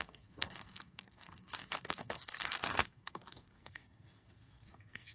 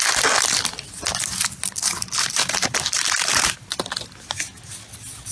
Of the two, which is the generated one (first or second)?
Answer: first